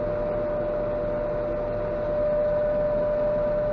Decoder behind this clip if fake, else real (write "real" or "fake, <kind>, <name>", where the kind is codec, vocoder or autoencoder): real